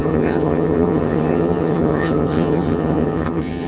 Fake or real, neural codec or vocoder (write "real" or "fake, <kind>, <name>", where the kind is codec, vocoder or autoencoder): fake, vocoder, HiFi-GAN